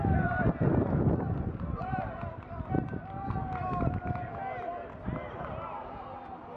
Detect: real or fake real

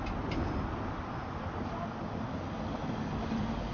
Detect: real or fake real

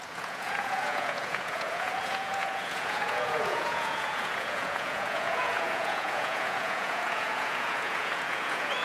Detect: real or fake fake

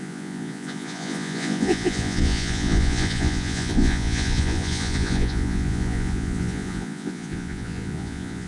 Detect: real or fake fake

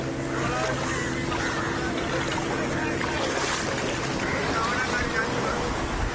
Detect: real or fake real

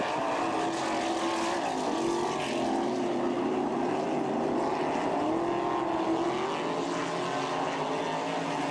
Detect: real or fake real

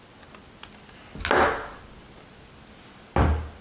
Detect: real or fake real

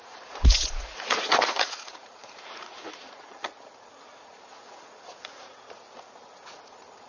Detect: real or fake fake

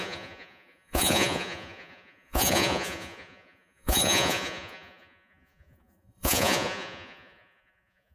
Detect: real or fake fake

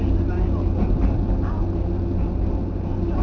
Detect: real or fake real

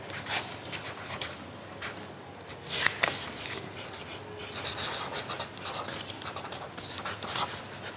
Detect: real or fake real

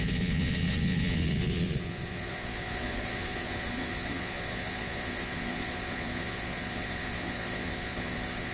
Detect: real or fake fake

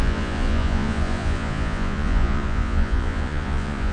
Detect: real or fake fake